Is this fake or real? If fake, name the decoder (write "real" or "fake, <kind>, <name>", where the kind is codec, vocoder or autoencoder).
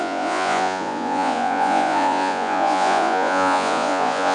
fake, vocoder, Vocos